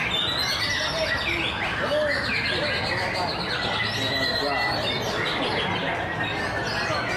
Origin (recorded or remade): recorded